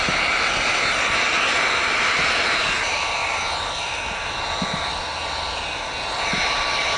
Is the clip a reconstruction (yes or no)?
no